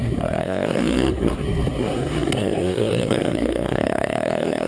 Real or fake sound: fake